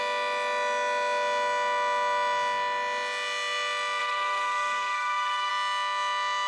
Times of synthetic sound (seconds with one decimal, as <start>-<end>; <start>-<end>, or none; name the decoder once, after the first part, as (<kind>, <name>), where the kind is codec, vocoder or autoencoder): 4.0-5.5 (codec, SNAC)